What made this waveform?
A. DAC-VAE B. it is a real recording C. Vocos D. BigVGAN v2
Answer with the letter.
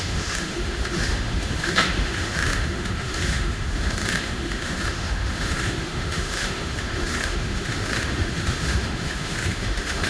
A